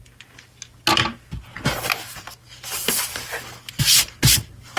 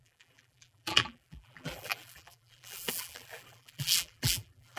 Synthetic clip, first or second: second